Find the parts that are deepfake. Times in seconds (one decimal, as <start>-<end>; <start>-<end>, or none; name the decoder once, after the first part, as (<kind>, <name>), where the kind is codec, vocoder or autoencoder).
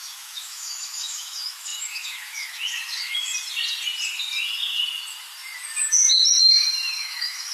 0.0-3.3 (autoencoder, DAC-VAE); 7.0-7.5